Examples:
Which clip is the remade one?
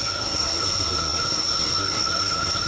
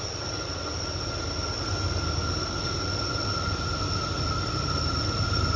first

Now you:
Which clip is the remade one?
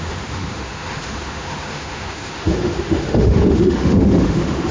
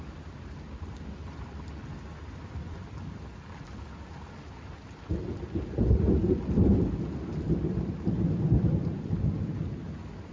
first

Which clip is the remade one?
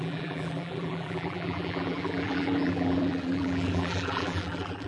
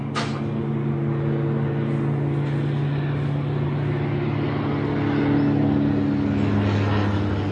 first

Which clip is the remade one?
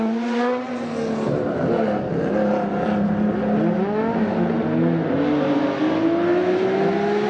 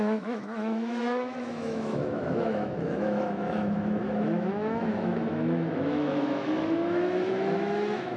second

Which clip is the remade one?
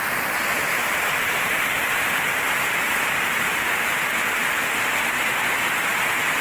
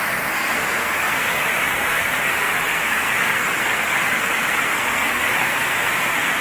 second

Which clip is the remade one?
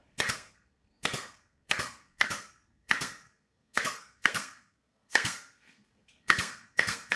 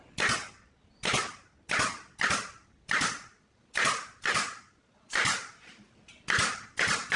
first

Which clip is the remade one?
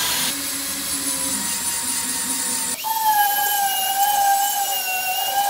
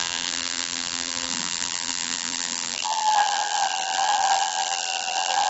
second